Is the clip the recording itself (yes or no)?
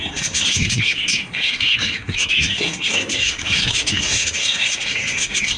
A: no